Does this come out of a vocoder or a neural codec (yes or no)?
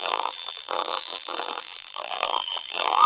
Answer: yes